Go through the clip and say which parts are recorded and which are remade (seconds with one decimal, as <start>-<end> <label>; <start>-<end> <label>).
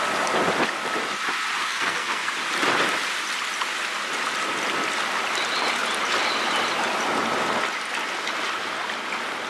0.0-1.6 recorded; 1.6-2.3 remade; 2.3-9.5 recorded